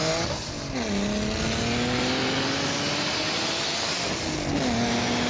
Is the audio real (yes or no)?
yes